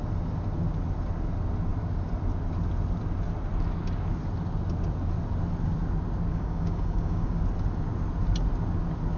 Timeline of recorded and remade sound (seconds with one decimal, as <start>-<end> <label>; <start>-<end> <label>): 0.0-6.3 recorded; 6.3-7.4 remade; 7.4-9.2 recorded